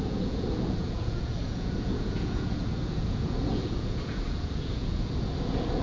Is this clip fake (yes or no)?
yes